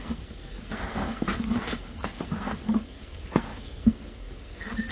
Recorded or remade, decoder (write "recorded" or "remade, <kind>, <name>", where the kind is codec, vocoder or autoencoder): remade, codec, SNAC